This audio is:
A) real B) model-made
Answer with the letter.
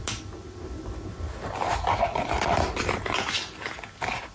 A